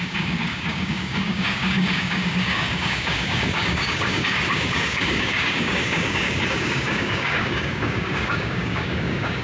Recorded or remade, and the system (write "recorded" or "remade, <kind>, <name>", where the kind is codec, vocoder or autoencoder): remade, codec, DAC